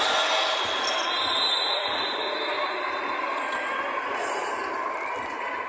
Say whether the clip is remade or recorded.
recorded